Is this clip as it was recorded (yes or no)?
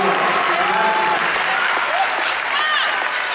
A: yes